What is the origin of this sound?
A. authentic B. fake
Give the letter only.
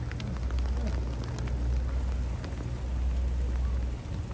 A